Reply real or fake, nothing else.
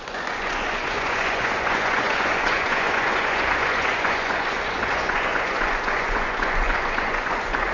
fake